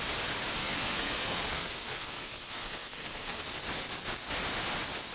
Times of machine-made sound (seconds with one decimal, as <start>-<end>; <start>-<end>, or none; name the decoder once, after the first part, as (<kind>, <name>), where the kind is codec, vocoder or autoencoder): 0.6-3.4 (codec, SNAC)